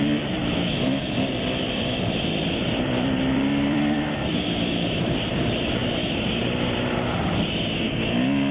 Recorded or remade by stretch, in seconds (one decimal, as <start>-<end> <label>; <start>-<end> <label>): 0.0-5.8 remade; 5.8-8.5 recorded